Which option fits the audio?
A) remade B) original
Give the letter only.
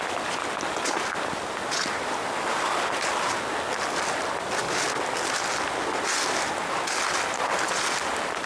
B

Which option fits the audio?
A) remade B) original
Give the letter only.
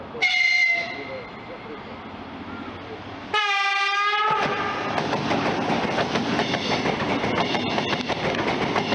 B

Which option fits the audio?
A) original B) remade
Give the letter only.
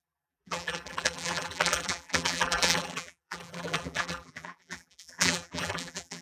B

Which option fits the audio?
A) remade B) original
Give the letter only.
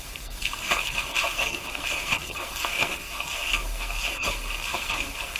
A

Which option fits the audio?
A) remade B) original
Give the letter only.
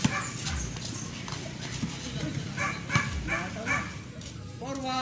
B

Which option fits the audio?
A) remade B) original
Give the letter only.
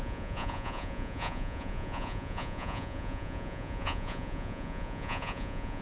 A